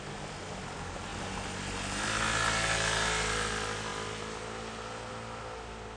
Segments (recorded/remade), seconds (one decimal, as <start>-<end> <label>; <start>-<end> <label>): 0.0-6.0 recorded